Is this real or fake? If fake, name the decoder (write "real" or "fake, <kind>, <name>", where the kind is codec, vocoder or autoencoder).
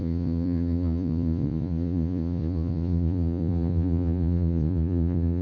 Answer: fake, vocoder, Vocos